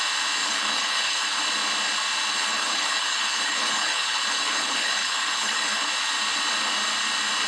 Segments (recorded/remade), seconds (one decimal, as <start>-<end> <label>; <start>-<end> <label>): 0.0-0.4 recorded; 0.4-1.4 remade; 1.4-2.3 recorded; 2.3-5.9 remade; 5.9-7.5 recorded